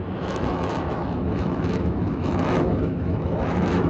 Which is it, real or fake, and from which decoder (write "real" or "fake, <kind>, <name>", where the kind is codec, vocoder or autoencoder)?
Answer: fake, autoencoder, DAC-VAE